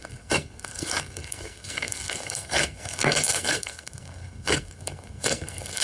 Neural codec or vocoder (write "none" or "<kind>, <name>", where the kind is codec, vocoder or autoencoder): codec, SNAC